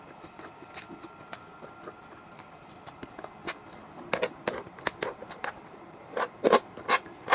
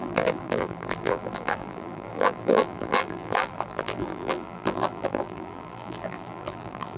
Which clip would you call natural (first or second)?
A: first